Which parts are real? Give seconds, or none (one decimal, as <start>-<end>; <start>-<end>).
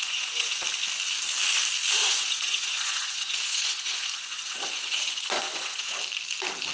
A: 0.6-2.0; 6.0-6.7